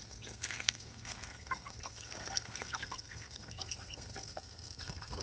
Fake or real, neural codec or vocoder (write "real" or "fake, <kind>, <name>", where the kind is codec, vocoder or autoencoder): fake, codec, SNAC